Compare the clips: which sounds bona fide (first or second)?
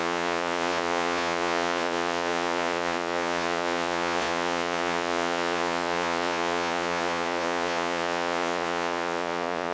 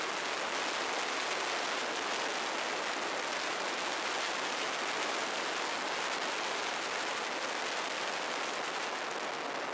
second